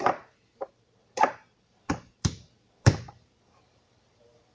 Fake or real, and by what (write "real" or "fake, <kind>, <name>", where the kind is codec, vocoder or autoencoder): fake, vocoder, BigVGAN v2